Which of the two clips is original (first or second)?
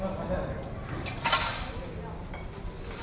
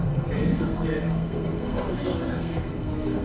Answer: first